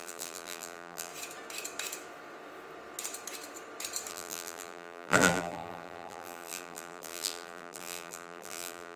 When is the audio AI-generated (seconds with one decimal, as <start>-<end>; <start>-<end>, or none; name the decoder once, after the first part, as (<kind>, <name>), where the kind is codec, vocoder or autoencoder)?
0.0-1.1 (vocoder, BigVGAN v2); 4.1-9.0